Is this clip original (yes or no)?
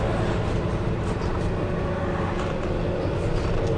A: yes